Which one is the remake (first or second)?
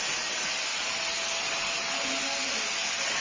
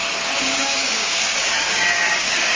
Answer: second